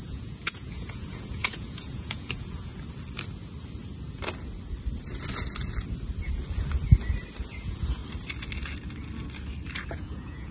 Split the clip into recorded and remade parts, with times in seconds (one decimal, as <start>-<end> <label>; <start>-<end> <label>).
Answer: 0.0-2.7 remade; 2.7-7.4 recorded; 7.4-8.0 remade; 8.0-9.9 recorded; 9.9-10.5 remade